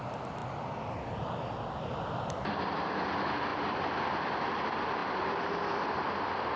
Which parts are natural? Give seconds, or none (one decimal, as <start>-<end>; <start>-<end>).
0.4-1.8; 5.0-6.0

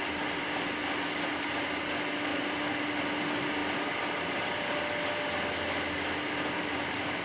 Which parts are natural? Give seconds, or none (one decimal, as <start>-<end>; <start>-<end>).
0.0-7.2

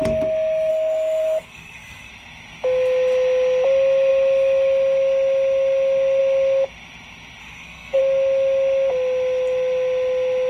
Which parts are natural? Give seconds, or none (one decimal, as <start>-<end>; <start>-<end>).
0.0-0.7; 2.1-7.4; 8.0-10.5

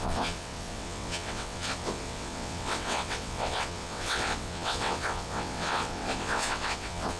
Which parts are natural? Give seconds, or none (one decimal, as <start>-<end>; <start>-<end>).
none

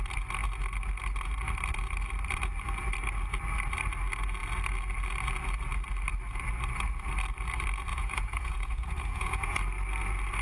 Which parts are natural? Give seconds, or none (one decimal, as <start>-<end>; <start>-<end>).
0.0-7.9; 9.6-10.4

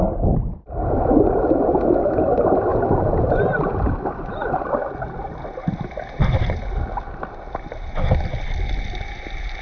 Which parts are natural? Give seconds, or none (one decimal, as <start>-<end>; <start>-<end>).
0.0-9.6

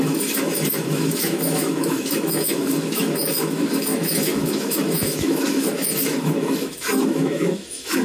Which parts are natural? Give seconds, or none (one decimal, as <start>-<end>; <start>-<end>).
none

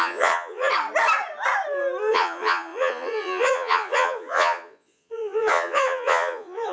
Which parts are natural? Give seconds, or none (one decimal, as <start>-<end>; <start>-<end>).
0.6-2.1